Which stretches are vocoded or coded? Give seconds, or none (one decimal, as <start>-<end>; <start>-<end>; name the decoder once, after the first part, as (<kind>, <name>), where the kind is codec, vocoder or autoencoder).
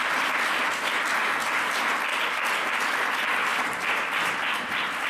none